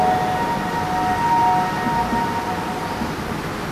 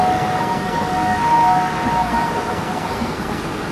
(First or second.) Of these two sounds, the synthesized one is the second